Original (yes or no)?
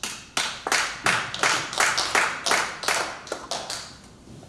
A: yes